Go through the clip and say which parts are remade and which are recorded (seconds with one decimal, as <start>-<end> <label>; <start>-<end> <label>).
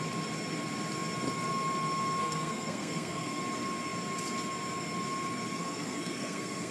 0.0-2.2 recorded; 2.2-3.4 remade; 3.4-5.5 recorded; 5.5-6.7 remade